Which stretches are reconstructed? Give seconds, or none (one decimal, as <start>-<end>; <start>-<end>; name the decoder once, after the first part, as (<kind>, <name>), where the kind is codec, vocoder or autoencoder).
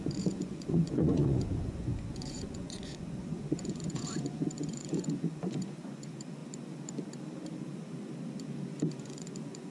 0.0-6.4 (vocoder, Vocos); 9.0-9.7